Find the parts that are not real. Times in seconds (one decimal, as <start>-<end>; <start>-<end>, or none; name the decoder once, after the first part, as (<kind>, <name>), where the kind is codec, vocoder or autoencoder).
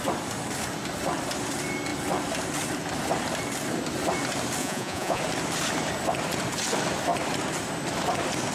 4.6-5.2 (vocoder, Vocos)